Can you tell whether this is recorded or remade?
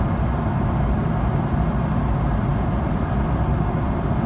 recorded